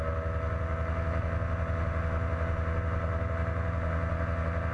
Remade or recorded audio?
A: recorded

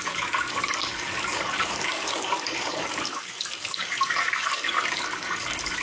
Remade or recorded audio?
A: remade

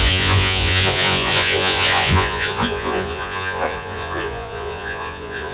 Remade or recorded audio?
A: remade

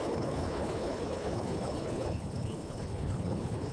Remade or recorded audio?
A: remade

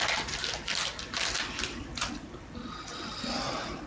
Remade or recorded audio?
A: recorded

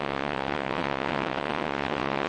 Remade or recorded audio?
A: remade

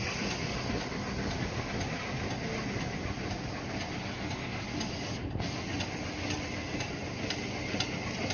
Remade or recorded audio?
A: recorded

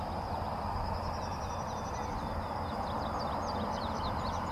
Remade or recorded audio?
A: recorded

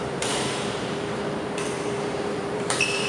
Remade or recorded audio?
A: remade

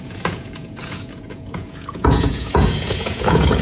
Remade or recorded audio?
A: remade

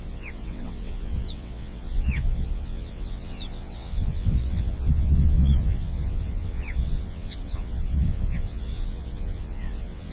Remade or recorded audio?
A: remade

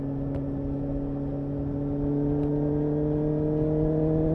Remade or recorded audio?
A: recorded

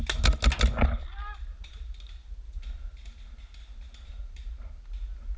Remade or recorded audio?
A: recorded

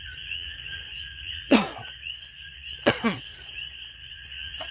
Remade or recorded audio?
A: remade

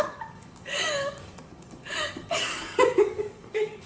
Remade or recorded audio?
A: remade